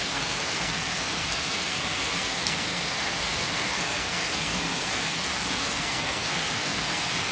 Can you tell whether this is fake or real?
fake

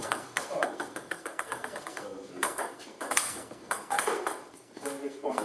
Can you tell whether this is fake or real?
fake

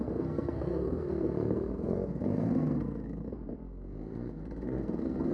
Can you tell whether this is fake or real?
fake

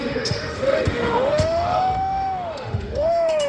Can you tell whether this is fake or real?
fake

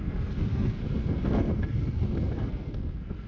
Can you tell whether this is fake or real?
fake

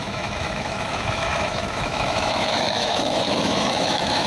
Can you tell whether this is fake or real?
fake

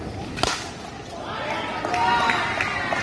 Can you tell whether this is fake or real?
real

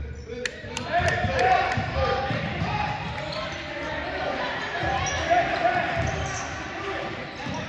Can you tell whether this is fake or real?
real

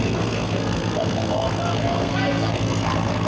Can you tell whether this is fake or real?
fake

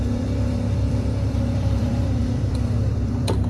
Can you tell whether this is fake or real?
fake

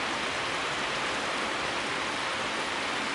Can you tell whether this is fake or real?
real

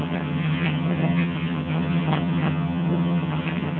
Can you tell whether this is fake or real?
fake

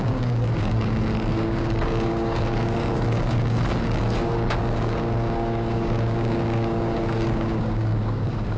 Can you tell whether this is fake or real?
fake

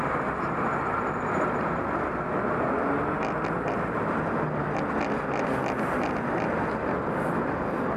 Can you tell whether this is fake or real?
real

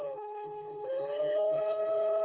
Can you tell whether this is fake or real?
fake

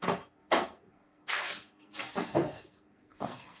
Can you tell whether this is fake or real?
fake